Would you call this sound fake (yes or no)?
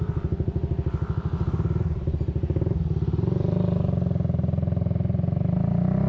no